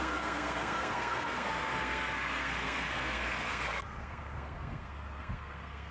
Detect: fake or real fake